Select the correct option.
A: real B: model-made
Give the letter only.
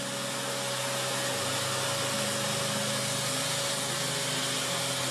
A